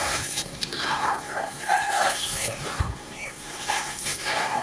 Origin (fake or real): fake